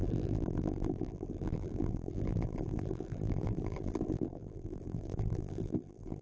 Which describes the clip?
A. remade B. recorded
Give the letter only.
A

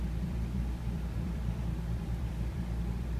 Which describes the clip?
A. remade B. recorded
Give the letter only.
A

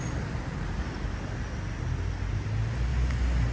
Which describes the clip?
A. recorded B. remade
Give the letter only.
A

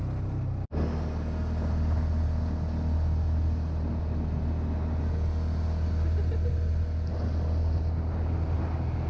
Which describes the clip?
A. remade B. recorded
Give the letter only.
B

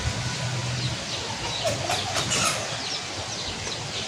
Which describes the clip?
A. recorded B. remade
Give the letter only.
A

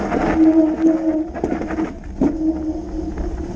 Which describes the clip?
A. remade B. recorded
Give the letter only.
B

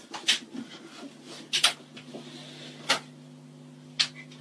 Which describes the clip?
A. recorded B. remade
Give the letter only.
A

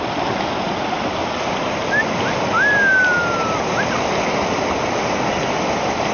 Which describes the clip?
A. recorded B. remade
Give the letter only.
A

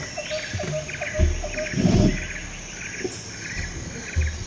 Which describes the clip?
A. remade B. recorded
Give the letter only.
B